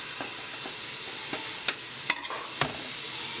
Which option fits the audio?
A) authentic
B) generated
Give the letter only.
A